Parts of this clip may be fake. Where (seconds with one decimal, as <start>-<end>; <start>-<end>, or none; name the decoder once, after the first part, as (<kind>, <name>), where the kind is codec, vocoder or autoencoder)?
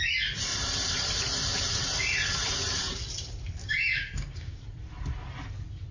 3.6-4.6 (codec, DAC)